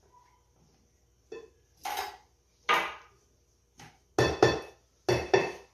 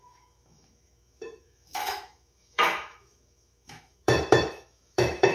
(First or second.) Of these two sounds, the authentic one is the first